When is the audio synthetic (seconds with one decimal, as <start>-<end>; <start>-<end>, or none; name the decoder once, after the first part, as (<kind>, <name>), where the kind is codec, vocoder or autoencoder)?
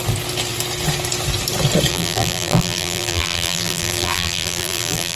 1.9-5.2 (vocoder, BigVGAN v2)